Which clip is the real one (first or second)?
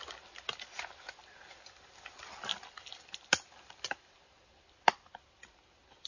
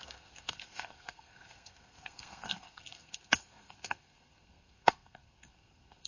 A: first